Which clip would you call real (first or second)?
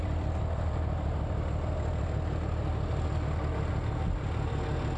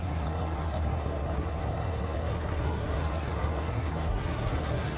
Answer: first